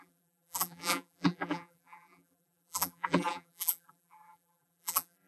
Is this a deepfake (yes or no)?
yes